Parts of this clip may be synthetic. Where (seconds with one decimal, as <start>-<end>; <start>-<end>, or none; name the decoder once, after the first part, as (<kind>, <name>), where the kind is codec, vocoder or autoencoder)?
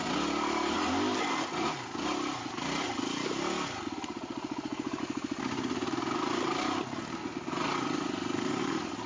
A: none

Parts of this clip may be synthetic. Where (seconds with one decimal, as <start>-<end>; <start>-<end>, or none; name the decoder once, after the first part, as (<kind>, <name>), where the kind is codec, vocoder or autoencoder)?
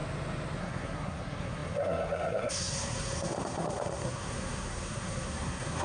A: 0.6-5.8 (codec, SNAC)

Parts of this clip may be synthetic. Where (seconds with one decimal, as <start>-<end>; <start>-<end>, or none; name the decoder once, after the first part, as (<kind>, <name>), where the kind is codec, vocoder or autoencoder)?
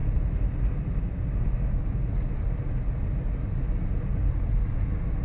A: none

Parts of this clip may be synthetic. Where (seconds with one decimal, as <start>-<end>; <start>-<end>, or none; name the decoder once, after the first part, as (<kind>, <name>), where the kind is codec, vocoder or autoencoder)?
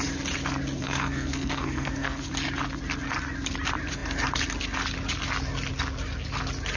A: 0.8-2.3 (codec, SNAC)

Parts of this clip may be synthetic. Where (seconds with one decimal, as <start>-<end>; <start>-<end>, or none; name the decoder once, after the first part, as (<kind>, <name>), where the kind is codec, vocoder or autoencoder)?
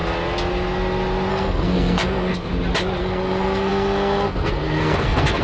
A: 1.3-2.5 (codec, SNAC); 3.0-5.4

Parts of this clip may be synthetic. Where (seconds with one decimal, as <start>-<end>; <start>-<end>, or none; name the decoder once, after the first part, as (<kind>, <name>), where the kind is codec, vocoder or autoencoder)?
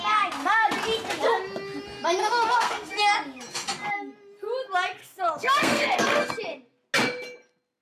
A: 2.2-3.0 (codec, SNAC); 5.0-6.3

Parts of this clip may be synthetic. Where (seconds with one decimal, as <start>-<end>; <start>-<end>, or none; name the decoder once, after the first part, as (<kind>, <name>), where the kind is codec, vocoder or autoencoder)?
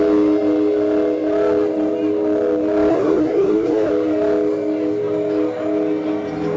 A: 2.9-3.9 (codec, SNAC)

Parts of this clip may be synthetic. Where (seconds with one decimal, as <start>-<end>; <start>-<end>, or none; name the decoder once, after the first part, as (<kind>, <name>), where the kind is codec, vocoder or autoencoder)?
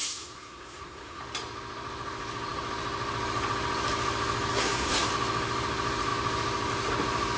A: 0.0-1.2 (codec, SNAC); 4.5-5.1